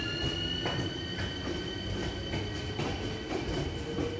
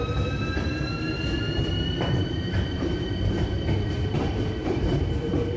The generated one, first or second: second